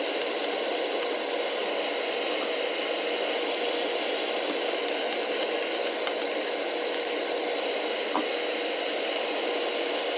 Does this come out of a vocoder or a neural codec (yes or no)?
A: no